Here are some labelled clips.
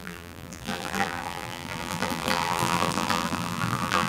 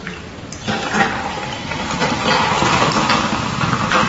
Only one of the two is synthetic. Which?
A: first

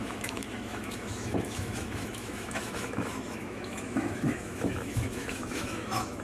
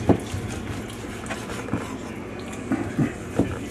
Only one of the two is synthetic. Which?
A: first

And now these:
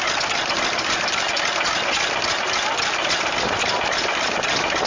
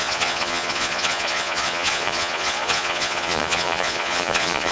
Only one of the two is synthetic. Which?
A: second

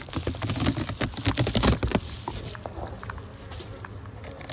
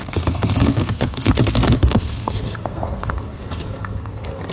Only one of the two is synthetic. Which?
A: second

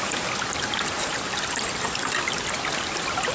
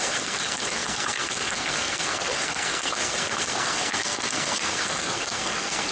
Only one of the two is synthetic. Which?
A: second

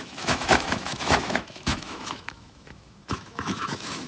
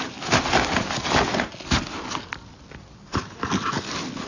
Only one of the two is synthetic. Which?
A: first